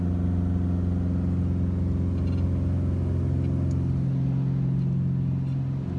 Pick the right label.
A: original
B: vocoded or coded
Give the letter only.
A